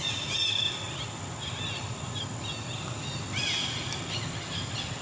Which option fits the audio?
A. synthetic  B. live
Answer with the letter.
B